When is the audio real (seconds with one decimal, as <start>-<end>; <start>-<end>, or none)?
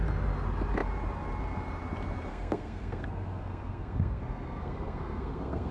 0.0-2.3